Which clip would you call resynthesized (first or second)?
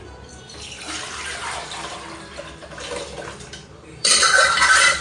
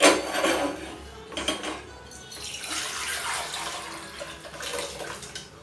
first